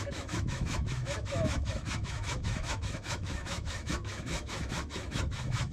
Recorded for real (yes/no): no